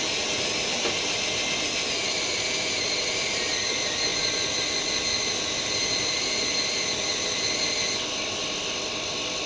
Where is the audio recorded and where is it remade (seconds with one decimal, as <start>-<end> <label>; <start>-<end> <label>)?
0.0-9.5 recorded